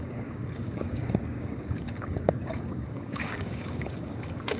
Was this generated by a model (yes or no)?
yes